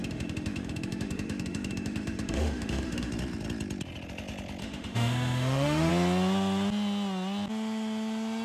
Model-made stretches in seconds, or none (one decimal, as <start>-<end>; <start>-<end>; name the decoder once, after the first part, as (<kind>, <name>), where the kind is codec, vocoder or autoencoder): 0.0-3.1 (autoencoder, DAC-VAE); 4.6-5.9